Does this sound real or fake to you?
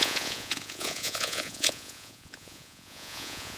fake